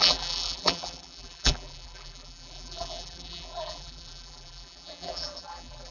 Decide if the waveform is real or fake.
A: fake